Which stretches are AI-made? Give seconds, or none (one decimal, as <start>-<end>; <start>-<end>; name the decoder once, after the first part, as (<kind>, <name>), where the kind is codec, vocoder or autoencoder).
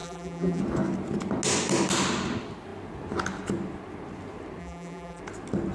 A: 0.0-0.6 (vocoder, BigVGAN v2); 4.6-5.2